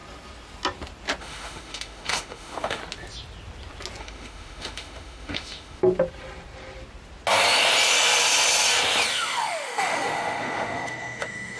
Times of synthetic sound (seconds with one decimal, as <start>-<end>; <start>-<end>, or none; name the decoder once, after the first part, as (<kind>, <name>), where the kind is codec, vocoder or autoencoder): 1.2-2.8 (autoencoder, DAC-VAE); 4.0-5.8; 9.1-11.6